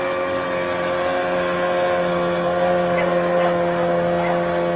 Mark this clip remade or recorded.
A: recorded